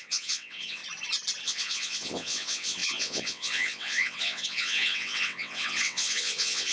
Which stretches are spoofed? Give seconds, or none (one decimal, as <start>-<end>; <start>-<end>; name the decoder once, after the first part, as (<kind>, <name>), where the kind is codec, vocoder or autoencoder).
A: 0.0-0.8 (vocoder, WaveNeXt); 1.4-6.7